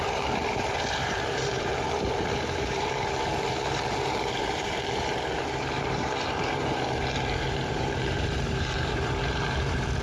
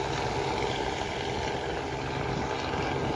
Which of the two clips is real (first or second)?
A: second